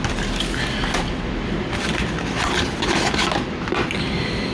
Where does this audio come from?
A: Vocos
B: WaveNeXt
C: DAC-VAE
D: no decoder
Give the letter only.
D